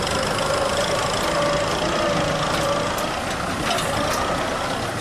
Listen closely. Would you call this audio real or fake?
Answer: real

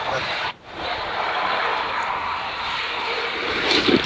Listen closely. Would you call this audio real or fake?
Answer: fake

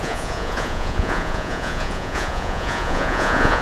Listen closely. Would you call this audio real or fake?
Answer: fake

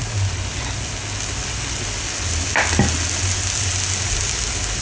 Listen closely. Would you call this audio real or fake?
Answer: real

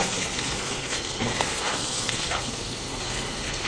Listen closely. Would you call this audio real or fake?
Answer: fake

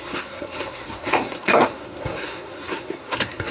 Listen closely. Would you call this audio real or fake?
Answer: fake